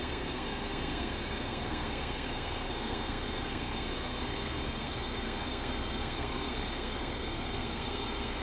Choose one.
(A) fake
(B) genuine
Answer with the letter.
A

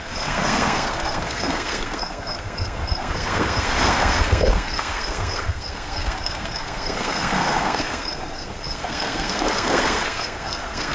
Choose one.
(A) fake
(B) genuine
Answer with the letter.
A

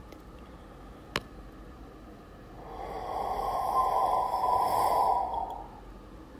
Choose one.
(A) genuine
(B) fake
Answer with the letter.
A